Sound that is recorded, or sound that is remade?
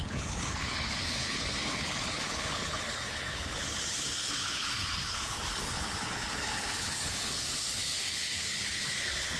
remade